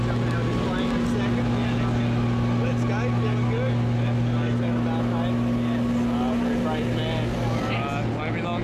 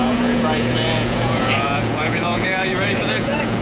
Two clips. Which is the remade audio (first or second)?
second